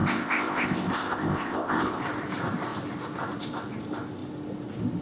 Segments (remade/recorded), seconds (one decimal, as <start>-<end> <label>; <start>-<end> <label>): 0.0-2.0 remade; 2.0-5.0 recorded